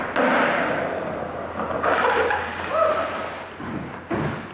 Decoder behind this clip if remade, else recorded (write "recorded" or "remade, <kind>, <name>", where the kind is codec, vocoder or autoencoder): recorded